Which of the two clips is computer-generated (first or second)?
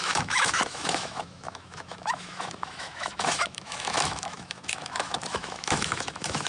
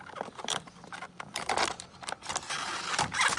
first